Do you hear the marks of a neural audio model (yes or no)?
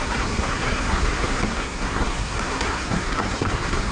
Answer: yes